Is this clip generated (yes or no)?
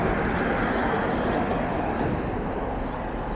no